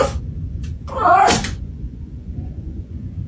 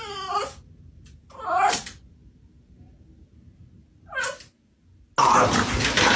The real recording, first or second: second